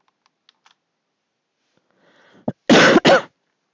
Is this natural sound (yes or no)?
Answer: yes